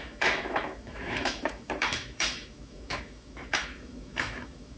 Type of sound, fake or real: fake